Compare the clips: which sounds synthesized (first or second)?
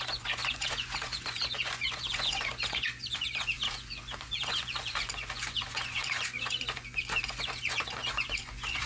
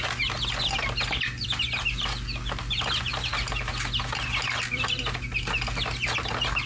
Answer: first